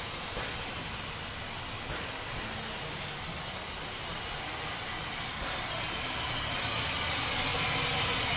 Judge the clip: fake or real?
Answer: real